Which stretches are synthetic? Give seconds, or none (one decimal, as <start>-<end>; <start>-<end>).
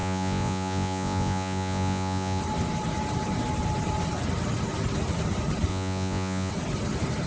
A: 0.0-2.4; 5.7-6.5